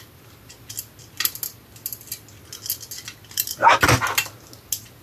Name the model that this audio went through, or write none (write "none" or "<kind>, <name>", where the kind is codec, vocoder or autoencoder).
none